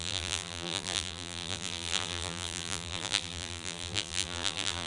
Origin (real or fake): fake